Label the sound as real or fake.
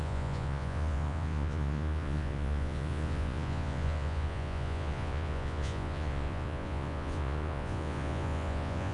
fake